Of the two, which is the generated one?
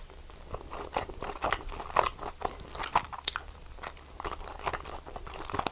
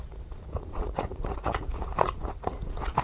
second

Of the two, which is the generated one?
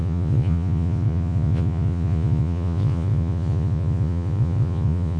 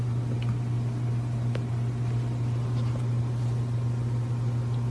first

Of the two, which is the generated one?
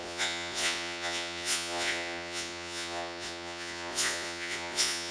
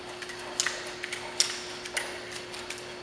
first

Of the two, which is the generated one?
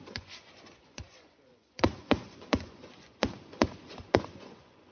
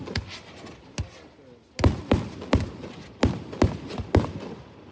first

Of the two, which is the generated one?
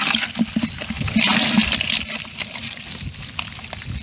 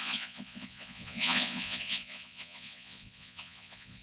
second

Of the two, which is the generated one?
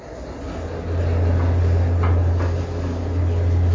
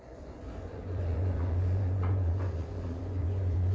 second